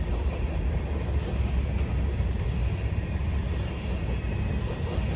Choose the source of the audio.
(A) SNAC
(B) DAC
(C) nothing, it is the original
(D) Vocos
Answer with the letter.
C